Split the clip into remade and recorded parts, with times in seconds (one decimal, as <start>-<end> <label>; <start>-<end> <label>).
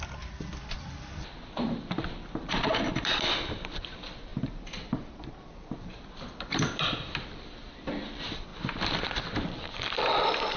0.0-4.3 remade; 4.3-5.1 recorded; 5.1-8.5 remade; 8.5-9.2 recorded; 9.2-10.6 remade